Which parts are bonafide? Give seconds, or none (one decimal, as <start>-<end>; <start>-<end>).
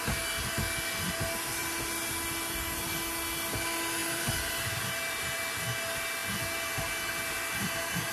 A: 0.0-4.0; 4.8-8.1